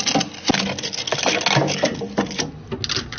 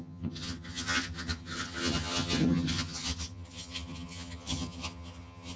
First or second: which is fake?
second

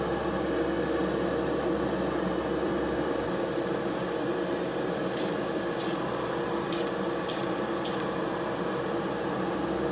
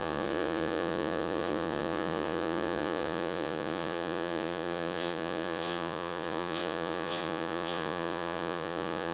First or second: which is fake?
second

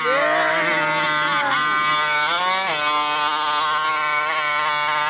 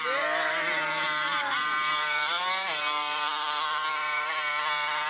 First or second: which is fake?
second